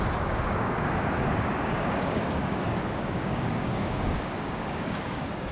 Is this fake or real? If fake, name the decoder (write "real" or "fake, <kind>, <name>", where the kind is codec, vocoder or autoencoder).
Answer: fake, codec, DAC